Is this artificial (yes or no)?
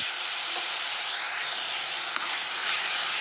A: yes